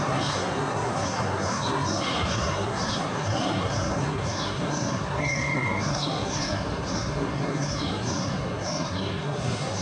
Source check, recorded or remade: remade